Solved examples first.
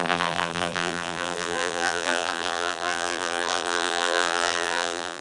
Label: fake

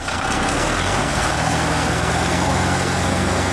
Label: fake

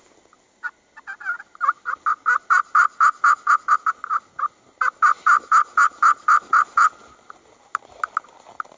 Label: real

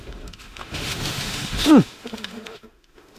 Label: fake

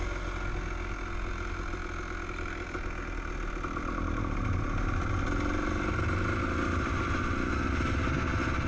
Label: real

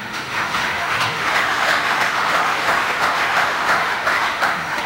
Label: fake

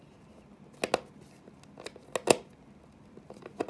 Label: real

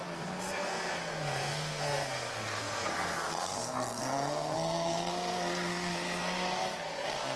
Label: fake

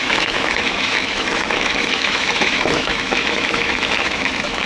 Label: fake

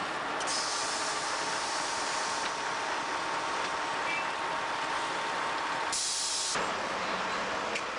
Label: real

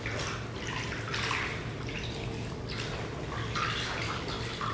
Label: real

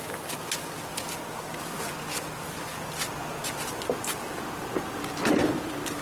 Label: real